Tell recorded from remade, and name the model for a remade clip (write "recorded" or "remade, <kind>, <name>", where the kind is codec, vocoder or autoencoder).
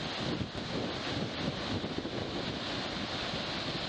recorded